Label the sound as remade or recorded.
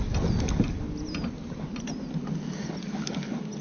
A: recorded